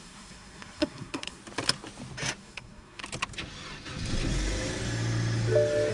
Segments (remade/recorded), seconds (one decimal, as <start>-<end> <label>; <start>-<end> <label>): 0.0-1.4 remade; 1.4-2.4 recorded; 2.4-3.0 remade; 3.0-5.9 recorded